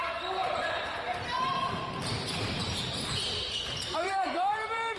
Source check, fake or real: fake